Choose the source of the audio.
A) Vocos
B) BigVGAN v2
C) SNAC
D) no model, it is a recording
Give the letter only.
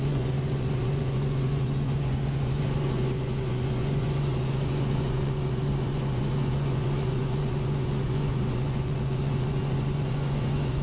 A